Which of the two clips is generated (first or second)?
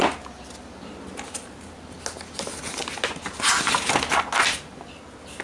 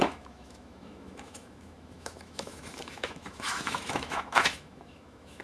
second